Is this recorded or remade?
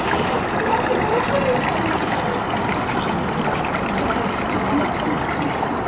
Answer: recorded